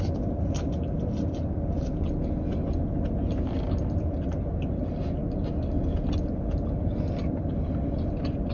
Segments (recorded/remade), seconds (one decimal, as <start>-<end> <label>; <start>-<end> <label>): 0.0-8.5 recorded